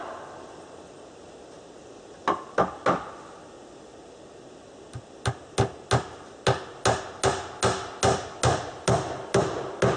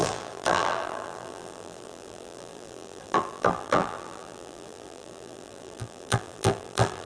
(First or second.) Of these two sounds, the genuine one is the first